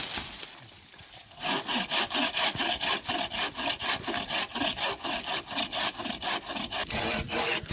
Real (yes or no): yes